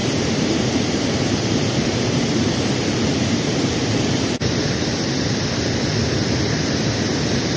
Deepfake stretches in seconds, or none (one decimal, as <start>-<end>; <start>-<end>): 0.0-4.6